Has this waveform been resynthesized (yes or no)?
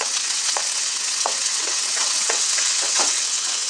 yes